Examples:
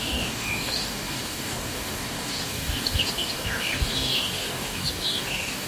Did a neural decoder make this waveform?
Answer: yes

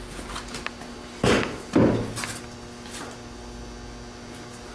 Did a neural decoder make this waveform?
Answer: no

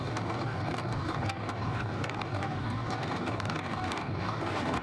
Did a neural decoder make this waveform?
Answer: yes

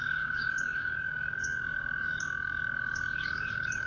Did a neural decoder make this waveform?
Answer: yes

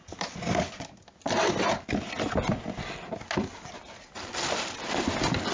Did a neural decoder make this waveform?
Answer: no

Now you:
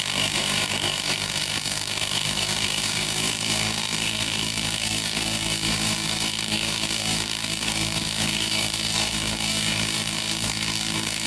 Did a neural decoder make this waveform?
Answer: yes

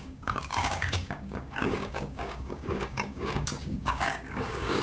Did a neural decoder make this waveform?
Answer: yes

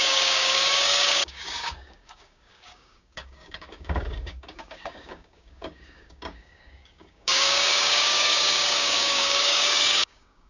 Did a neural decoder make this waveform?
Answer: yes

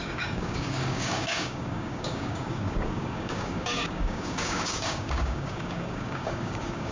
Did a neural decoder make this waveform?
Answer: yes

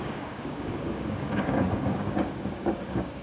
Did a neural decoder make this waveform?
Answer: yes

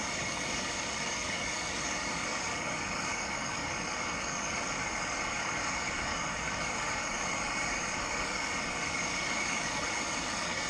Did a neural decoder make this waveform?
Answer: yes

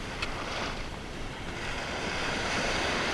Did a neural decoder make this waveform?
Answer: no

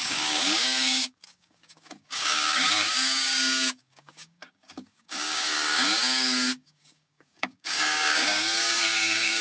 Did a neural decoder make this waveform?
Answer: yes